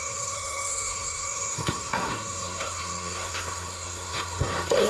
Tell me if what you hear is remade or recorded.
remade